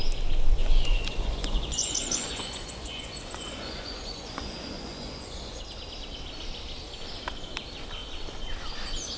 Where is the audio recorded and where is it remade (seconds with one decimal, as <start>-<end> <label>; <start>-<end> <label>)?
0.0-0.6 recorded; 0.6-5.6 remade; 5.6-9.2 recorded

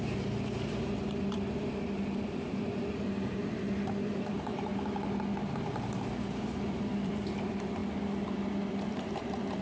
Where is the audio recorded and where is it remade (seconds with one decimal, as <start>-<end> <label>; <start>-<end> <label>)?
0.0-4.7 remade; 4.7-5.5 recorded; 5.5-7.8 remade; 7.8-8.7 recorded; 8.7-9.6 remade

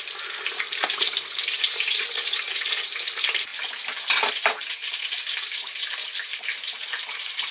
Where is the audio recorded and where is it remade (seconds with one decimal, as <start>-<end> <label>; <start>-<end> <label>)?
0.0-3.5 remade; 3.5-4.3 recorded; 4.3-7.5 remade

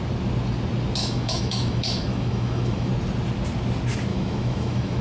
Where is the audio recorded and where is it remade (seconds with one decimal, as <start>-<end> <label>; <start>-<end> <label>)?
0.0-1.0 recorded; 1.0-2.9 remade; 2.9-4.1 recorded; 4.1-5.0 remade